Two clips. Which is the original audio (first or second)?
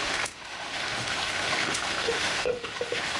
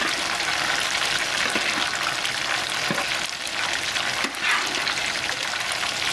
second